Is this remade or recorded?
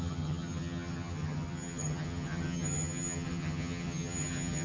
remade